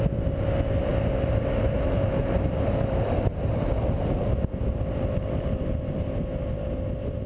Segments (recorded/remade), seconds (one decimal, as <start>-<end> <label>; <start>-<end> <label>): 0.0-0.9 recorded; 0.9-4.4 remade; 4.4-7.3 recorded